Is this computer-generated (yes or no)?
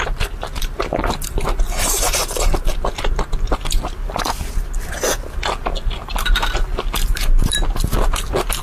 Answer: no